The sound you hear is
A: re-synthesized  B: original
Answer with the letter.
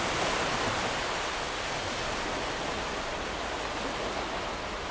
B